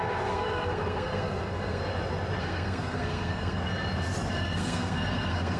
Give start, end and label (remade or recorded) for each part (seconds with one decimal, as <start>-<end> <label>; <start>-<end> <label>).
0.0-1.8 remade; 1.8-2.4 recorded; 2.4-3.6 remade; 3.6-4.3 recorded; 4.3-5.6 remade